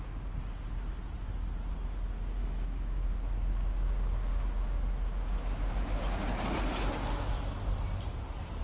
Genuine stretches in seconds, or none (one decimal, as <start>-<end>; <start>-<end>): 0.0-2.4; 3.1-8.6